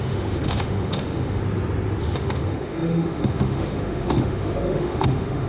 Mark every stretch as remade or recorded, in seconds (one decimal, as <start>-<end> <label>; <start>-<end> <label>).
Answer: 0.0-1.4 remade; 1.4-2.0 recorded; 2.0-5.5 remade